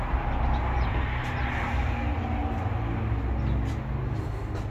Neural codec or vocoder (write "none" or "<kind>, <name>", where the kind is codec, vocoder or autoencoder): none